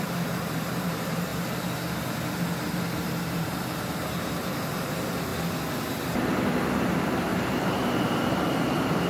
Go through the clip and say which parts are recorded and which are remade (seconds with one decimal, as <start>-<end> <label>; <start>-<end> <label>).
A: 0.0-1.3 remade; 1.3-2.9 recorded; 2.9-5.3 remade; 5.3-6.8 recorded; 6.8-9.1 remade